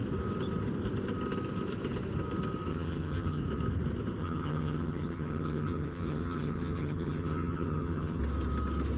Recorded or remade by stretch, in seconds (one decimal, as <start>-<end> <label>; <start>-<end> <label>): 0.0-2.7 recorded; 2.7-3.4 remade; 3.4-4.2 recorded; 4.2-8.2 remade; 8.2-9.0 recorded

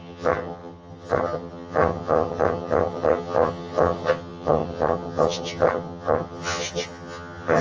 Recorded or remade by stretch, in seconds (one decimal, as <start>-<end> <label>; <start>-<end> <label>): 0.0-7.6 remade

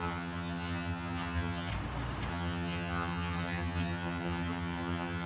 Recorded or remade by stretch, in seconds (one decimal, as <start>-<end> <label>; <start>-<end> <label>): 0.0-1.7 remade; 1.7-2.3 recorded; 2.3-5.3 remade